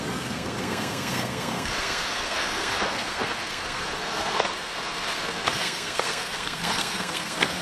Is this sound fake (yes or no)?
yes